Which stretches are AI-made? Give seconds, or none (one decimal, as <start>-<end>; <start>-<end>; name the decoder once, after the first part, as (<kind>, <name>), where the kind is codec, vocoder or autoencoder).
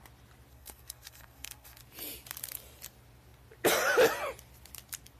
0.5-1.8 (codec, SNAC)